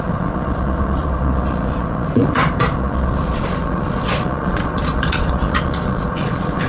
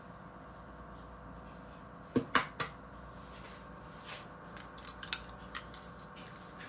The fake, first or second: first